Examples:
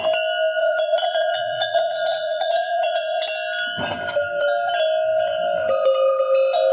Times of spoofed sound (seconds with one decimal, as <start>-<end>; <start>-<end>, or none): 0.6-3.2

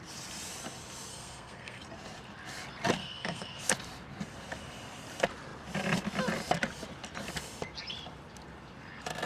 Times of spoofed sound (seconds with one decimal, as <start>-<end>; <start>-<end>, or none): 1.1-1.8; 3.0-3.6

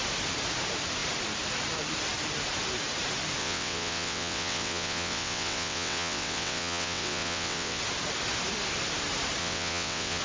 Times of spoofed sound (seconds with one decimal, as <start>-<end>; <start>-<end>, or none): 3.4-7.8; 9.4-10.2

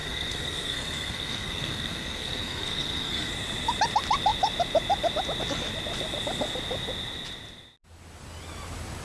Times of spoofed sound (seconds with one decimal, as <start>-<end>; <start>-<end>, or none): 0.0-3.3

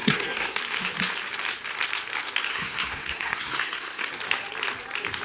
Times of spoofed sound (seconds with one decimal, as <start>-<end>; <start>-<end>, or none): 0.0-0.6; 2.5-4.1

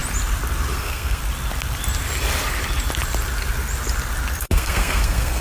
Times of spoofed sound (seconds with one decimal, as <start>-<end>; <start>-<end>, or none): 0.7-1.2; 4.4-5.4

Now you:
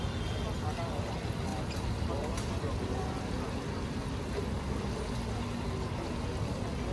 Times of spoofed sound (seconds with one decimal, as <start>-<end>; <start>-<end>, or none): none

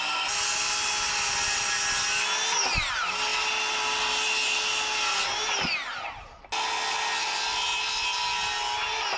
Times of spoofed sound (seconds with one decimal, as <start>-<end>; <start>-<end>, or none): none